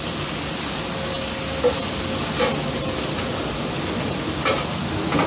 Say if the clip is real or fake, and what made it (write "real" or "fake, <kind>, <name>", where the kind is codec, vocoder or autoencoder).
real